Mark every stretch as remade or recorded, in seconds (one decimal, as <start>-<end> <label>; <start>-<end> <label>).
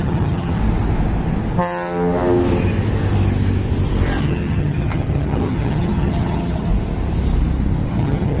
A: 0.0-0.6 remade; 0.6-4.2 recorded; 4.2-6.7 remade; 6.7-7.9 recorded; 7.9-8.4 remade